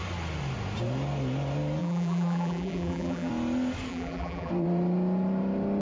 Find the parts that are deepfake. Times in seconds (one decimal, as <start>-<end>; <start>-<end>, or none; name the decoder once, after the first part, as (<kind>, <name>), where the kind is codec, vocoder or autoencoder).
1.8-3.3 (vocoder, BigVGAN v2); 3.9-4.5